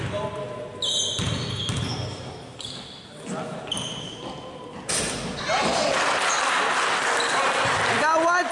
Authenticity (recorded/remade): recorded